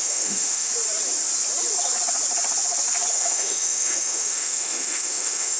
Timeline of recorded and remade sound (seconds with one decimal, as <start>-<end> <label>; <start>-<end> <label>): 0.0-0.7 remade; 0.7-3.1 recorded; 3.1-5.6 remade